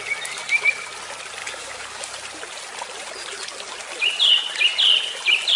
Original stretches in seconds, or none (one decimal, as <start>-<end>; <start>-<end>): 0.0-1.4; 2.1-5.6

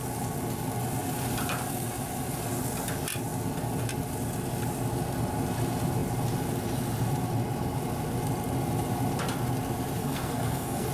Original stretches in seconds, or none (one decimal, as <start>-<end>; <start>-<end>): 0.0-10.0

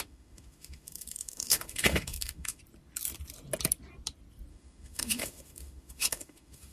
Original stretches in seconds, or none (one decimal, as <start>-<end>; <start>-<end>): 2.6-4.5

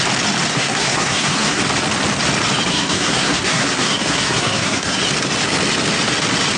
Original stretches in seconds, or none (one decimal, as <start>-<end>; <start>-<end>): 0.0-0.5; 1.6-2.7; 5.0-6.6

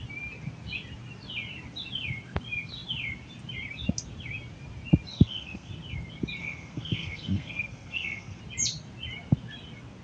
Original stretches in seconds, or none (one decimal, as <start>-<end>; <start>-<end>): 0.0-5.1; 5.7-6.4; 8.4-10.0

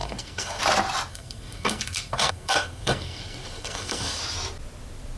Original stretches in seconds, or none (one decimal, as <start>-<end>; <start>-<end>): 0.6-1.1; 4.2-5.2

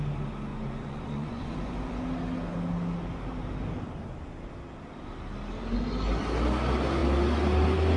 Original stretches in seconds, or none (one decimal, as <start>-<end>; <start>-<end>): 0.0-0.5; 2.0-8.0

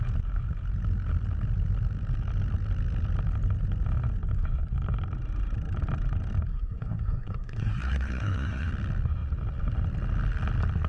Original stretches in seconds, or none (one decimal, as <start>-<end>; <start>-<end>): 0.0-6.5; 8.7-10.9